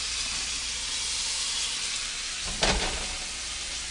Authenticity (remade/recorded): recorded